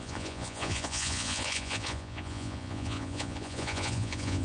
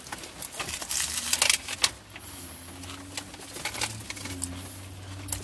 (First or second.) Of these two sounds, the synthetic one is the first